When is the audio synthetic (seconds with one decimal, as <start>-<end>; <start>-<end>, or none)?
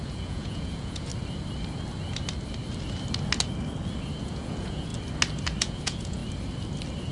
0.0-1.1; 4.2-4.9; 5.6-6.2